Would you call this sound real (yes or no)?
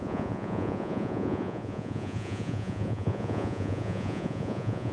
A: no